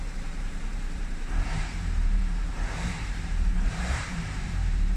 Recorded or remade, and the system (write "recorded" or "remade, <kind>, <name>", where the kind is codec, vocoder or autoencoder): remade, vocoder, BigVGAN v2